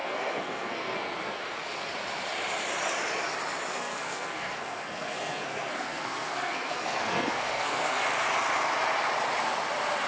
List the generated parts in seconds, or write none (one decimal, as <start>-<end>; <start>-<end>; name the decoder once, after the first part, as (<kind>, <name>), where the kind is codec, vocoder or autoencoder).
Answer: 0.0-1.4 (codec, SNAC); 3.7-8.0